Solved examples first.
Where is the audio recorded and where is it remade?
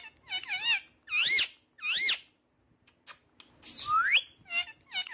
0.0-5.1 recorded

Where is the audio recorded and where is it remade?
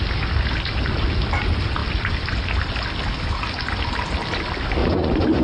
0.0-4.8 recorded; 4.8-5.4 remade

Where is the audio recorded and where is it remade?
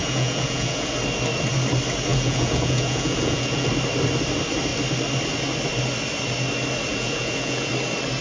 0.0-0.9 remade; 0.9-2.1 recorded; 2.1-3.7 remade; 3.7-6.9 recorded; 6.9-7.7 remade; 7.7-8.2 recorded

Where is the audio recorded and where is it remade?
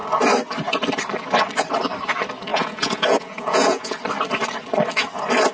0.0-2.5 recorded; 2.5-3.9 remade; 3.9-5.5 recorded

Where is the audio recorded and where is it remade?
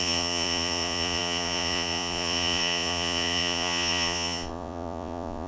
0.0-5.5 remade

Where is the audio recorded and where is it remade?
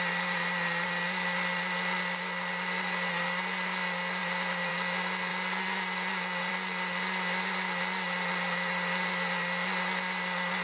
0.0-10.6 recorded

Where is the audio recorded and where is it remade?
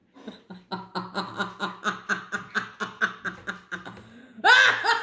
0.0-5.0 recorded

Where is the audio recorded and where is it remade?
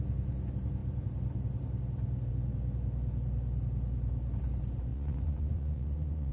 0.0-4.9 recorded; 4.9-6.3 remade